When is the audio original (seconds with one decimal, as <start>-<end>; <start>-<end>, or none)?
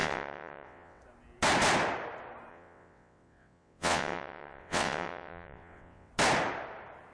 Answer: 1.0-2.5; 6.1-7.1